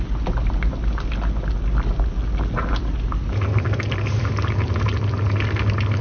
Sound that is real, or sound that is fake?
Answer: real